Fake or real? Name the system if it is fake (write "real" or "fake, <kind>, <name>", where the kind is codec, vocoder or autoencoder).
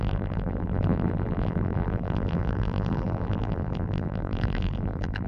fake, vocoder, BigVGAN v2